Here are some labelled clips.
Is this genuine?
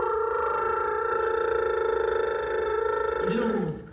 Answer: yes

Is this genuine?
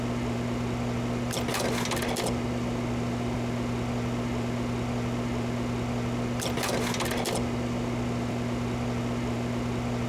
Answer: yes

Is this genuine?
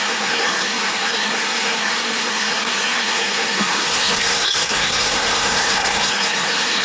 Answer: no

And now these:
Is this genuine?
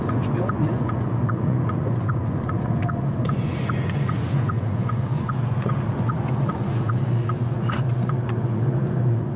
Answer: no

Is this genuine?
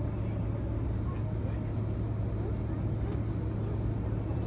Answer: yes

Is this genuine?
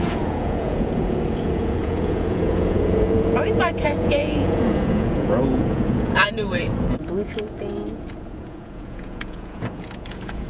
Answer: no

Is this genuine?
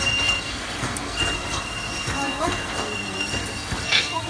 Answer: no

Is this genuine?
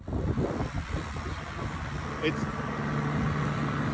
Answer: yes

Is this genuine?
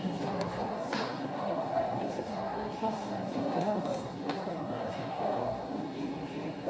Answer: no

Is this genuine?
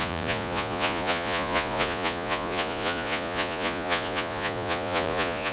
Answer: no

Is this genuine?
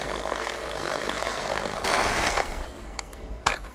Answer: no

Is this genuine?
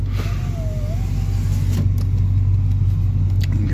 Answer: yes